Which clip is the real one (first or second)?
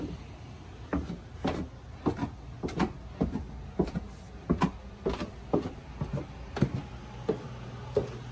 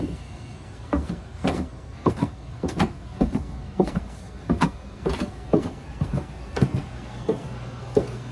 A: first